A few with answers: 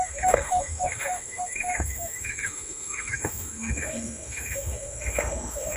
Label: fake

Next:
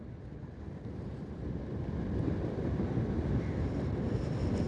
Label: real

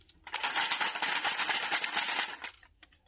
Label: real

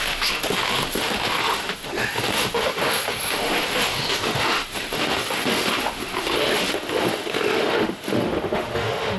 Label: fake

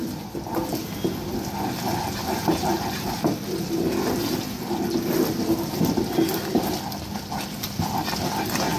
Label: real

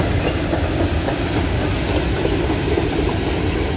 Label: real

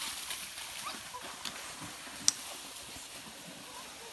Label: real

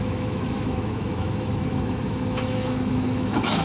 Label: fake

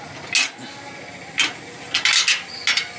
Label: real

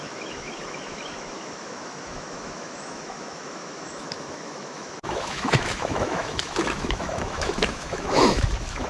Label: fake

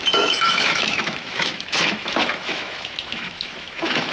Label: fake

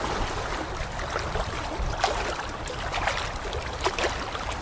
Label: real